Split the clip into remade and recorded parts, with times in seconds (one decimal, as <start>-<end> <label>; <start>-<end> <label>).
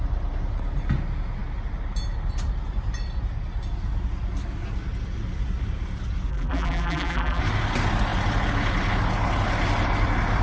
0.0-6.3 recorded; 6.3-7.4 remade; 7.4-10.4 recorded